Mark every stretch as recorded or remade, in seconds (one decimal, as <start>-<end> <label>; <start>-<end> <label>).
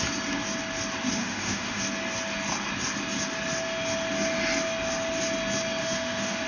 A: 0.0-1.2 recorded; 1.2-1.8 remade; 1.8-5.8 recorded; 5.8-6.5 remade